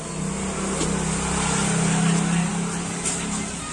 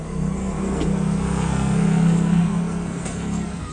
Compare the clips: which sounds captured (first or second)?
first